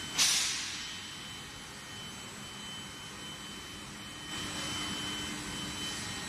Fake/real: real